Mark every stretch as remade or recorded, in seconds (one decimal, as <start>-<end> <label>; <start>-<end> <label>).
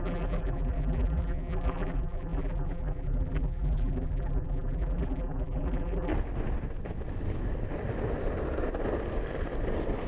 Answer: 0.0-6.1 remade; 6.1-10.1 recorded